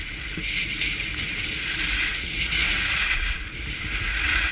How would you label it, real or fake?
fake